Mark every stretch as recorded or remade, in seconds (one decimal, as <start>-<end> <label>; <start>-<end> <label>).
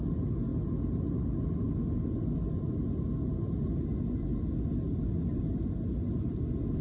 0.0-6.8 recorded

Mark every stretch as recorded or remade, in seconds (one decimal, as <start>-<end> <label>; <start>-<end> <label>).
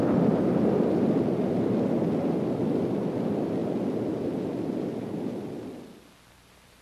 0.0-6.8 recorded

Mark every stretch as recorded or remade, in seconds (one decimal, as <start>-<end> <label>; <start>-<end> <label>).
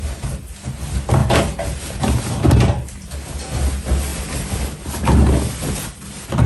0.0-1.2 recorded; 1.2-3.1 remade; 3.1-4.1 recorded; 4.1-5.0 remade; 5.0-6.5 recorded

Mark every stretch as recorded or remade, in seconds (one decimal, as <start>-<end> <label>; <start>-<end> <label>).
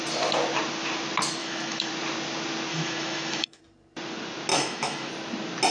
0.0-1.4 recorded; 1.4-1.9 remade; 1.9-2.7 recorded; 2.7-3.6 remade; 3.6-4.5 recorded; 4.5-5.1 remade; 5.1-5.7 recorded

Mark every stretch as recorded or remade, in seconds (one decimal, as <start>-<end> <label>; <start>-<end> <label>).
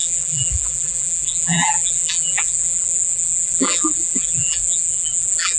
0.0-5.6 remade